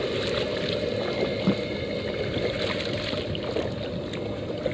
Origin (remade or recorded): recorded